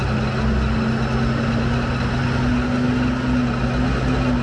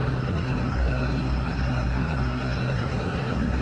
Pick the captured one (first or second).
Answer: first